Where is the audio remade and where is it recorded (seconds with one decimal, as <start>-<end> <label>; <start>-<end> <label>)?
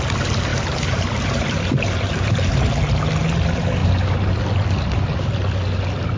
0.0-0.5 recorded; 0.5-2.7 remade; 2.7-3.8 recorded; 3.8-4.3 remade; 4.3-6.2 recorded